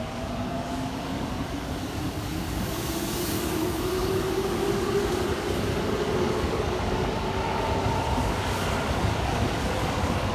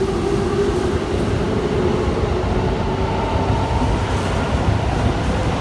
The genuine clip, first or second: second